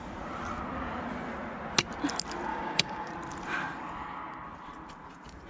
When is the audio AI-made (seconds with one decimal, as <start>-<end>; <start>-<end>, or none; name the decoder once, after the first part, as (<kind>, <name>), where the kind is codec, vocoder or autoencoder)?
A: 2.5-3.1 (codec, DAC)